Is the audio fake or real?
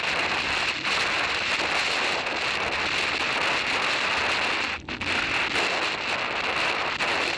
real